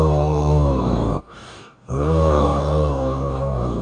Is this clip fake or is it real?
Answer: fake